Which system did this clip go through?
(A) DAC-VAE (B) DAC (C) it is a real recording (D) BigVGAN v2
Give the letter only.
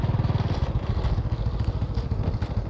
C